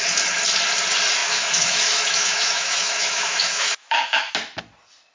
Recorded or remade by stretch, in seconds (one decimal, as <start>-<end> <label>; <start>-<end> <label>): 0.0-1.2 recorded; 1.2-4.3 remade; 4.3-5.1 recorded